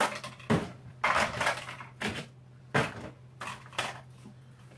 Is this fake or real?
real